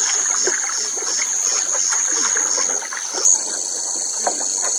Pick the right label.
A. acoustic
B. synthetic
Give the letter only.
A